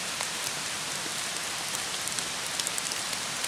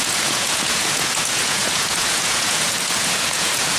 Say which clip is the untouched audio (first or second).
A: first